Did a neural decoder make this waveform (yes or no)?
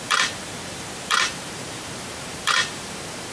yes